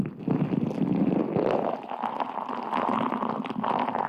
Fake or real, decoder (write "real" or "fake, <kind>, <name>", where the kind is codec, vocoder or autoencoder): real